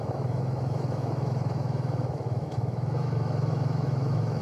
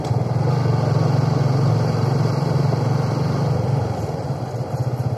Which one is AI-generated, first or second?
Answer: first